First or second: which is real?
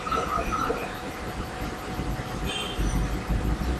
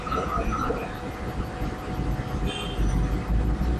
second